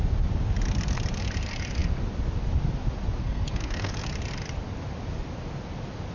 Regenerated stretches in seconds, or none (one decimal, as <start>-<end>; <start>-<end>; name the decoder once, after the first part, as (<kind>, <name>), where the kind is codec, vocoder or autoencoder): 3.2-3.9 (codec, SNAC)